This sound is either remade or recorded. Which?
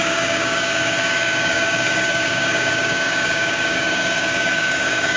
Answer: remade